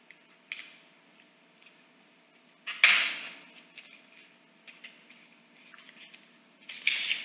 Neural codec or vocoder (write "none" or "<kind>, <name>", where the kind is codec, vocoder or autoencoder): none